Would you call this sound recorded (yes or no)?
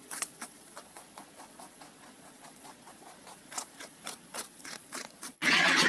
no